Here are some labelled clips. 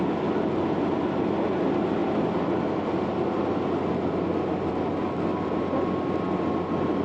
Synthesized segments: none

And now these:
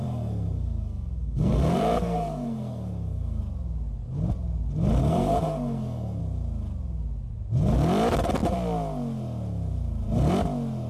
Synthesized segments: 0.0-3.4 (codec, SNAC); 5.0-6.2

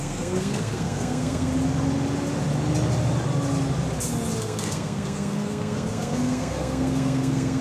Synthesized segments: 0.0-1.5 (codec, SNAC); 4.4-7.6

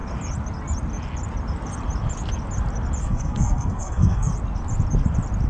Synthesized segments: 3.0-4.3 (codec, SNAC)

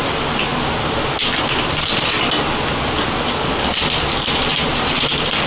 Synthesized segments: none